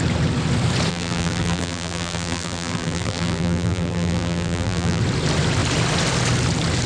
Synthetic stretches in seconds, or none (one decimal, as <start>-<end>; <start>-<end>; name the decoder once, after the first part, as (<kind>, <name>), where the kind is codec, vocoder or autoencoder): 0.9-5.0 (vocoder, BigVGAN v2)